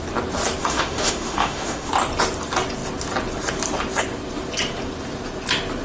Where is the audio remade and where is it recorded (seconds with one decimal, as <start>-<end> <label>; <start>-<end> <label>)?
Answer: 0.0-0.6 recorded; 0.6-1.9 remade; 1.9-5.8 recorded